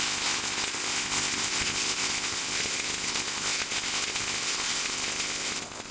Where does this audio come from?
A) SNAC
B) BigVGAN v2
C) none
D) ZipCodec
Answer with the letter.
D